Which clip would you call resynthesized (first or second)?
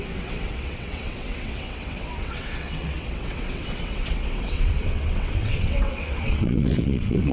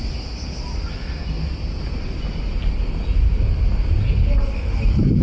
first